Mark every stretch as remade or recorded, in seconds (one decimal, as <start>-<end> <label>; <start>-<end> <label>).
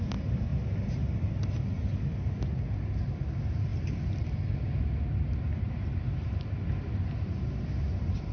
0.0-8.3 recorded